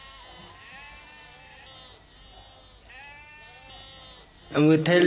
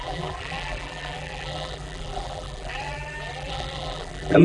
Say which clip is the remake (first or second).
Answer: second